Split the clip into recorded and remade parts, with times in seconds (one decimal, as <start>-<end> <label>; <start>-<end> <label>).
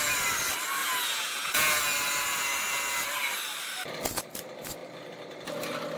0.0-0.8 recorded; 0.8-1.8 remade; 1.8-6.0 recorded